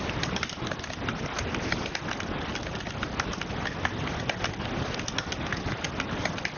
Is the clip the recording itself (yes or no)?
yes